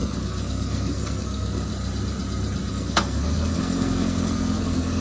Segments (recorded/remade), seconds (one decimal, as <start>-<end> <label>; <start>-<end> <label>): 0.0-1.7 remade; 1.7-2.7 recorded; 2.7-5.0 remade